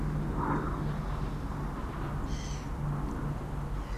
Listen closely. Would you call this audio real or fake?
real